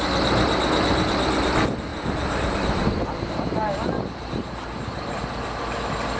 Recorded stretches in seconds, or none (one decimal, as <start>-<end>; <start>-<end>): 0.0-1.9; 5.2-6.2